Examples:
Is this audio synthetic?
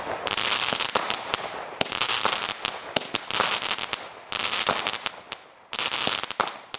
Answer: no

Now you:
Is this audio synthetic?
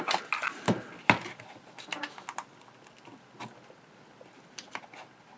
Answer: no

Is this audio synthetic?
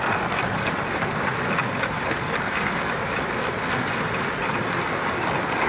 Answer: no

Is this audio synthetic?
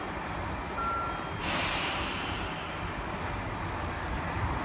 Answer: no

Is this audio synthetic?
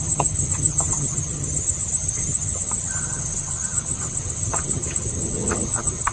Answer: yes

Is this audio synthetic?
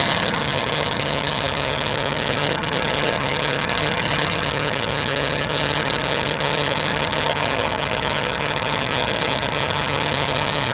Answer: yes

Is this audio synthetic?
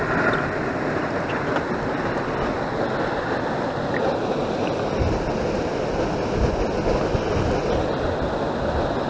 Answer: no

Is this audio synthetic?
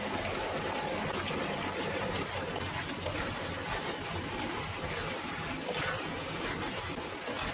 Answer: no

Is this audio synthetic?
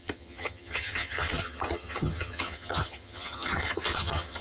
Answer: yes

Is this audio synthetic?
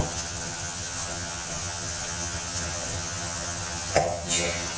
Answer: yes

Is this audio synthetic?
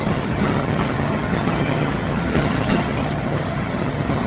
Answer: yes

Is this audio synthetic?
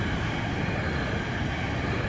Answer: no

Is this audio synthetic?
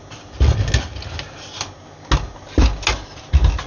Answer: no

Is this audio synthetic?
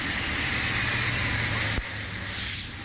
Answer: no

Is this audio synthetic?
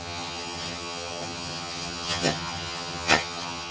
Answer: yes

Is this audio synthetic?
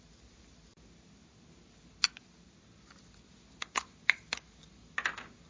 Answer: no